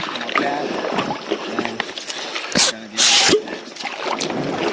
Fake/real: real